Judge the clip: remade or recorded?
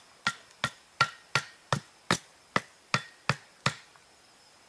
recorded